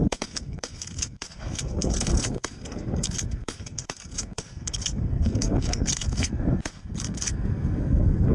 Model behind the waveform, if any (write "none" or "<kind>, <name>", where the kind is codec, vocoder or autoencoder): codec, SNAC